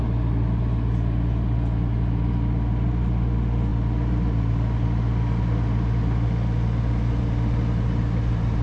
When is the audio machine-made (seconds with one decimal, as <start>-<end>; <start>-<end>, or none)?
none